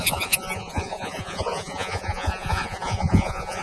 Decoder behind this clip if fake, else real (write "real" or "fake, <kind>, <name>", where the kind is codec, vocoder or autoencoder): fake, vocoder, Vocos